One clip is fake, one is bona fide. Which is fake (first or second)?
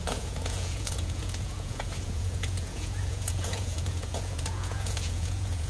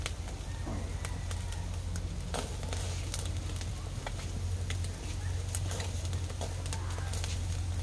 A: first